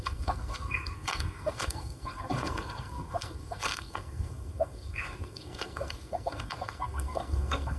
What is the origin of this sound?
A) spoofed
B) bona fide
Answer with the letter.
A